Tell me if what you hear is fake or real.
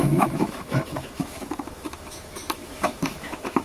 fake